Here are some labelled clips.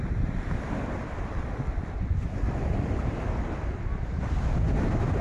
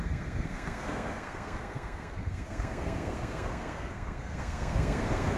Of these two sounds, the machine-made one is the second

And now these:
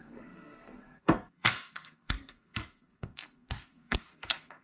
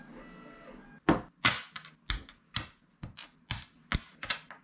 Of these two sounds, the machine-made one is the first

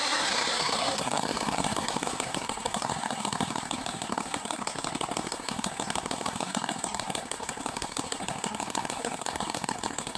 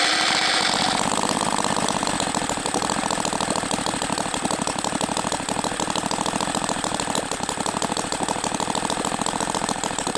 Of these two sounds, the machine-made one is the first